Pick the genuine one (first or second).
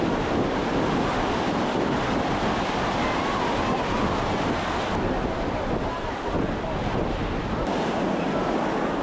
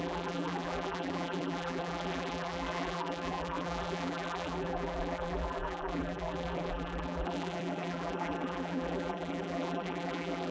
first